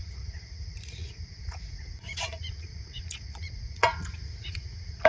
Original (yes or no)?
no